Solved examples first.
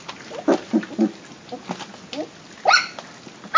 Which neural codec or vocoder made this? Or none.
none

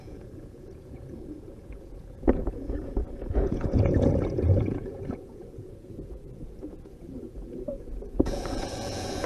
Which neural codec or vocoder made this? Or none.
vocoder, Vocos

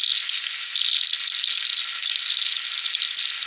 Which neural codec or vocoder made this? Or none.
none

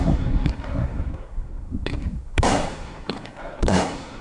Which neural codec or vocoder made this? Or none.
codec, SNAC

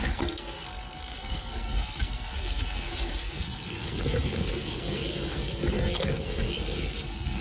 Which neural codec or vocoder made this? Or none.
codec, SNAC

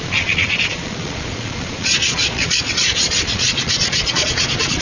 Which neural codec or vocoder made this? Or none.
vocoder, Vocos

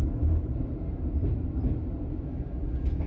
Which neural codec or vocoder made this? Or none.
none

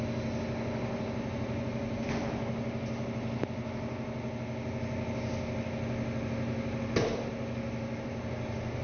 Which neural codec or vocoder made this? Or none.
none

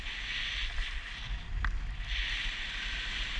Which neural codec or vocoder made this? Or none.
none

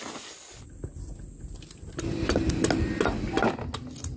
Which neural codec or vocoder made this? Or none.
none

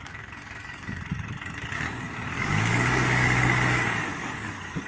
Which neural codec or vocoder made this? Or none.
codec, DAC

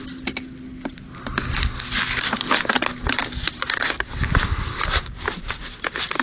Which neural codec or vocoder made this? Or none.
none